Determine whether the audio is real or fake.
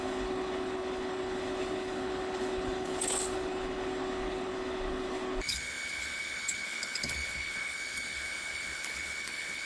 fake